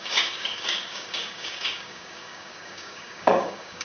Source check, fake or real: fake